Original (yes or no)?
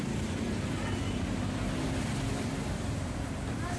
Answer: yes